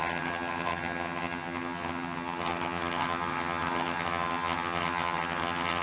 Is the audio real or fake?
fake